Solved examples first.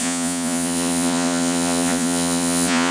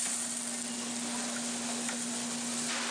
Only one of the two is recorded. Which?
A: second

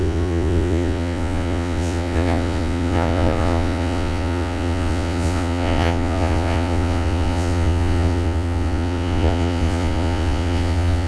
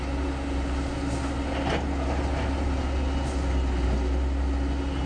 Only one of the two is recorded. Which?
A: second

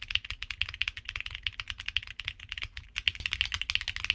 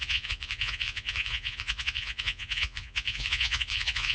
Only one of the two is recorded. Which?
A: first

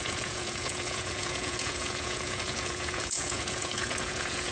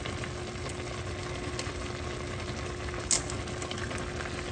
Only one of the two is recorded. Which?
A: second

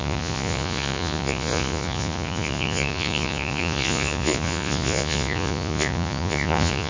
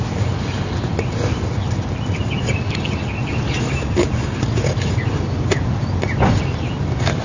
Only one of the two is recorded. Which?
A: second